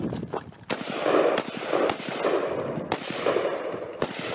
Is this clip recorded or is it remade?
recorded